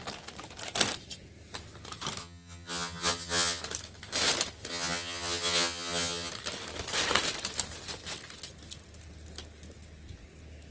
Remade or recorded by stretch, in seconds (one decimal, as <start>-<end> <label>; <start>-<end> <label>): 0.0-2.2 recorded; 2.2-3.6 remade; 3.6-4.7 recorded; 4.7-6.3 remade; 6.3-10.7 recorded